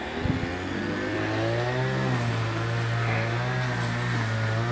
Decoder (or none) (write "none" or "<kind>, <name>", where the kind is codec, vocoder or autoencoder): none